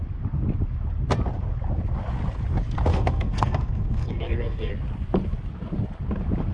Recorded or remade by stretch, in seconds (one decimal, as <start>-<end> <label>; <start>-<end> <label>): 0.0-2.9 recorded; 2.9-4.7 remade; 4.7-6.5 recorded

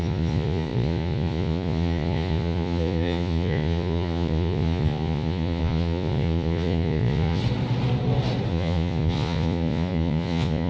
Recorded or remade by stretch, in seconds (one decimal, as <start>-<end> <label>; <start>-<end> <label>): 0.0-7.4 remade; 7.4-8.5 recorded; 8.5-10.7 remade